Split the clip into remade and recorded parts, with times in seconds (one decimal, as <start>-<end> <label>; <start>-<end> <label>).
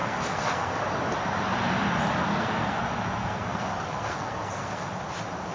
0.0-0.8 remade; 0.8-2.3 recorded; 2.3-2.8 remade; 2.8-3.2 recorded; 3.2-4.9 remade; 4.9-5.5 recorded